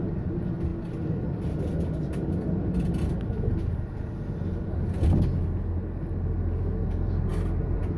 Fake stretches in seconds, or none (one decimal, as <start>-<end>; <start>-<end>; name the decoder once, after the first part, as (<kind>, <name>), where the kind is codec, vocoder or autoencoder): none